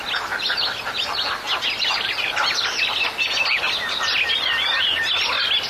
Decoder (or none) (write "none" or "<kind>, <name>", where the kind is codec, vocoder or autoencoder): none